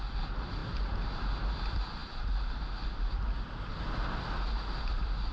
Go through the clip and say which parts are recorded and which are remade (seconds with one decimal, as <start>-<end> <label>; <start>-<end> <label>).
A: 0.0-5.3 recorded